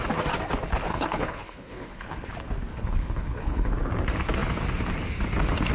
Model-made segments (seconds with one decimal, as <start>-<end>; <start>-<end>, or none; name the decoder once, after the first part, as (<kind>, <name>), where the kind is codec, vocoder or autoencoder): 0.9-2.3 (codec, HILCodec); 2.7-3.7